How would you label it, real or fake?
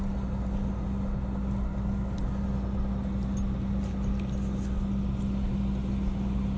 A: real